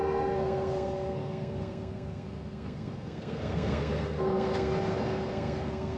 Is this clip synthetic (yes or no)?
yes